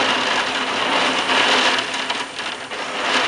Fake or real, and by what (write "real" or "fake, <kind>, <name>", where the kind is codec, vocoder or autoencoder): real